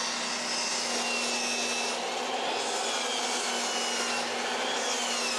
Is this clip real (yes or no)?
yes